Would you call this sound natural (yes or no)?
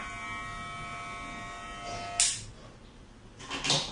yes